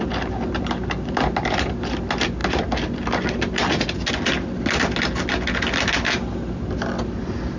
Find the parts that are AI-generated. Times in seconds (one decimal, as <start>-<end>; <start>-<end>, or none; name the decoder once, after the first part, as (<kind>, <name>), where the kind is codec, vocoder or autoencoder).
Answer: none